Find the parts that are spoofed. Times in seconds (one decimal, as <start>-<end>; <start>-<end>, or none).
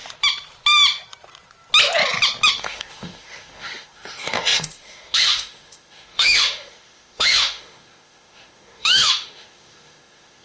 2.5-10.4